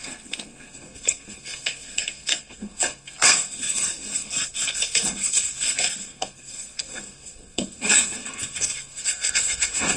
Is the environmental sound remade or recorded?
remade